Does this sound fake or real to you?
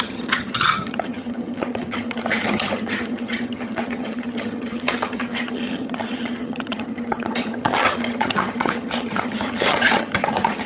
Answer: fake